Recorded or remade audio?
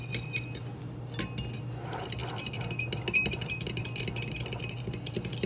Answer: recorded